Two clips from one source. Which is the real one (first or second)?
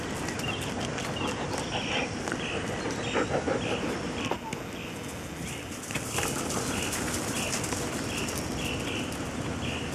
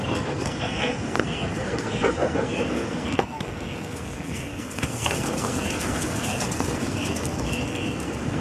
first